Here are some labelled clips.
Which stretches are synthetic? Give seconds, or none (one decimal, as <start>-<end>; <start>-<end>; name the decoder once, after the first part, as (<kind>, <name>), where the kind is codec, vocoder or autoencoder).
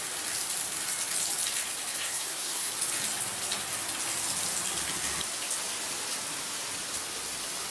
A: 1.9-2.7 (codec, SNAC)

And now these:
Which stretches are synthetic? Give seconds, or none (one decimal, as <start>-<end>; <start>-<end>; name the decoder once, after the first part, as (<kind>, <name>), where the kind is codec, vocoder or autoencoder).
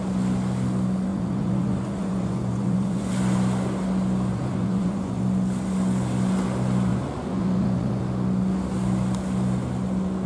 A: 1.1-3.1 (vocoder, Vocos); 4.3-5.2; 6.9-8.0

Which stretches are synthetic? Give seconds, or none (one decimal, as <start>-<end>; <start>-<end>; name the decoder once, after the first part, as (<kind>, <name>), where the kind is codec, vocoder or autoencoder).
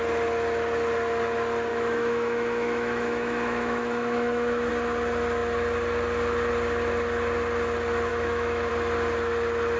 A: 1.7-4.7 (autoencoder, DAC-VAE); 8.1-8.7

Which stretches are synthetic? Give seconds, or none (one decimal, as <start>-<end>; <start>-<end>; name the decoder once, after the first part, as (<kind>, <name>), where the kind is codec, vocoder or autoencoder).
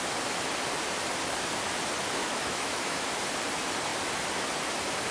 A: 2.2-3.1 (autoencoder, DAC-VAE)